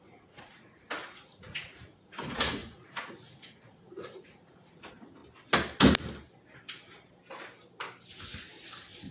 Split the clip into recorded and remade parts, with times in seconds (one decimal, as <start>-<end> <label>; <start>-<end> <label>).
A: 0.0-5.2 remade; 5.2-9.1 recorded